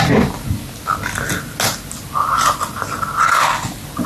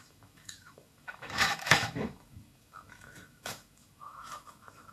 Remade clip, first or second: second